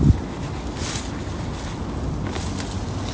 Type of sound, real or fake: real